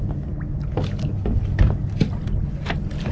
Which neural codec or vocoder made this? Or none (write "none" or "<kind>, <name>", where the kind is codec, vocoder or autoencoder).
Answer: none